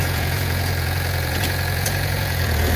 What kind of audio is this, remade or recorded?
remade